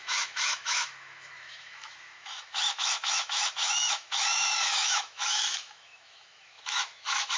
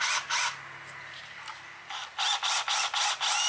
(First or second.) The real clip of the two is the second